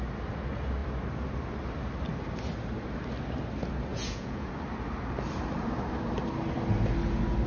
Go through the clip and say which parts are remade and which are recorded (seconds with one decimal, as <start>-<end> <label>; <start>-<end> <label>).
0.0-3.9 recorded; 3.9-4.5 remade; 4.5-7.5 recorded